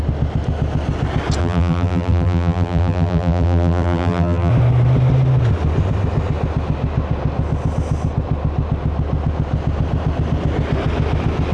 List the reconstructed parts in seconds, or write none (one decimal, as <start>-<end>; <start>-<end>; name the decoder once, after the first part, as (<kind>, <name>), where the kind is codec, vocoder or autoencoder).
1.4-4.5 (vocoder, BigVGAN v2)